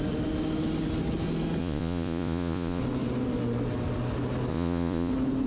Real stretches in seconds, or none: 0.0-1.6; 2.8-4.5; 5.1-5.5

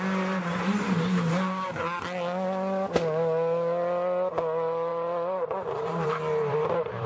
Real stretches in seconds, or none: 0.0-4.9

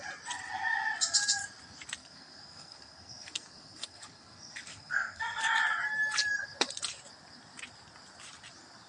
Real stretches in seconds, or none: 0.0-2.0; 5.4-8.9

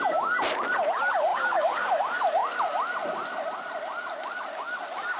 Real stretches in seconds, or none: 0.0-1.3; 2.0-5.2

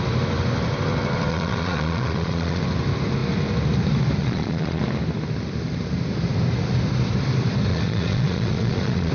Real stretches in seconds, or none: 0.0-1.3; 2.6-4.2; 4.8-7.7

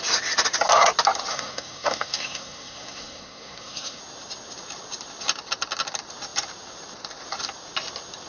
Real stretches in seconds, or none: 0.0-1.3; 4.0-8.3

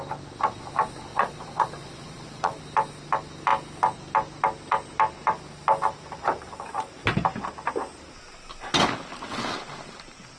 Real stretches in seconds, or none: 0.0-1.1; 2.6-10.4